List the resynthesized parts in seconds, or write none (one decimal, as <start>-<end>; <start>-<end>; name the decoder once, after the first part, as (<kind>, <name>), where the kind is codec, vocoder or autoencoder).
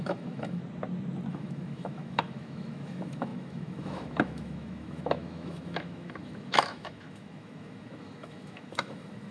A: 0.0-0.6 (autoencoder, DAC-VAE); 1.3-9.3